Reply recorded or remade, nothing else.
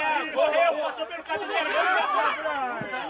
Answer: recorded